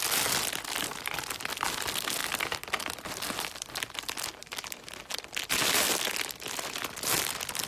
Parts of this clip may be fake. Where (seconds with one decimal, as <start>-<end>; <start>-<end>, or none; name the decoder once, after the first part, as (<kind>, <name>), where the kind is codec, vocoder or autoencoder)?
none